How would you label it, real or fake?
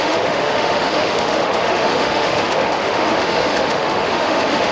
fake